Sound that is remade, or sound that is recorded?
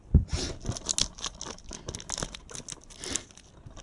recorded